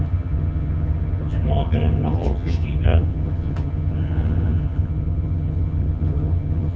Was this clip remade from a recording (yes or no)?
yes